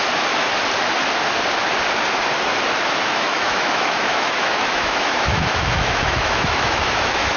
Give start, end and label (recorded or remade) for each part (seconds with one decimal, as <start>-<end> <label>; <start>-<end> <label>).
0.0-3.0 recorded; 3.0-7.4 remade